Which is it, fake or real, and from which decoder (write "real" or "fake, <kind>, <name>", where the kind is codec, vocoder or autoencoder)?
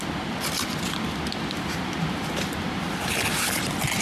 real